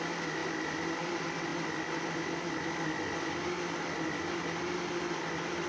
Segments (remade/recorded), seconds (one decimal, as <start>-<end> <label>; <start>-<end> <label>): 0.0-5.7 recorded